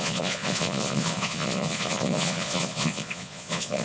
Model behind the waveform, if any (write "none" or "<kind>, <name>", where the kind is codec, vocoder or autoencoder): vocoder, Vocos